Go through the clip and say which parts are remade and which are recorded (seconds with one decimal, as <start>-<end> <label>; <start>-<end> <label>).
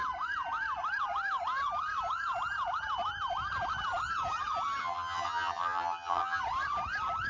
0.0-4.8 recorded; 4.8-6.4 remade; 6.4-7.3 recorded